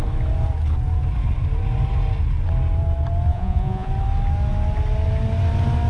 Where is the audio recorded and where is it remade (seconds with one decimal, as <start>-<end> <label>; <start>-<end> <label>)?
0.0-3.3 recorded; 3.3-3.9 remade; 3.9-5.9 recorded